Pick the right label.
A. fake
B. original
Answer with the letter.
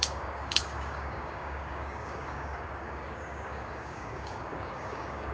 A